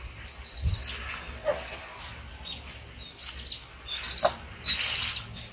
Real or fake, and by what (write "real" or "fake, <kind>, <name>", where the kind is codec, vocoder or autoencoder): real